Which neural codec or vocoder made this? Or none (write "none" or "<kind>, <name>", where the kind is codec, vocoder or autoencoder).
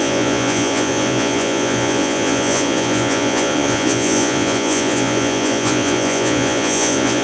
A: vocoder, Vocos